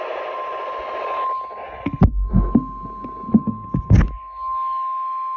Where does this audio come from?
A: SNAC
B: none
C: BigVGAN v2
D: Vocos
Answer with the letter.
B